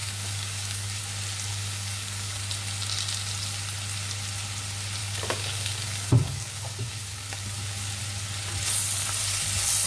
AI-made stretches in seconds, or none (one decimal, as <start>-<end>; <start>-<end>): 0.0-1.0; 1.5-2.4; 5.0-8.0